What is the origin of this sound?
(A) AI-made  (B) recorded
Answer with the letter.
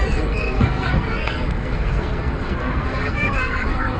A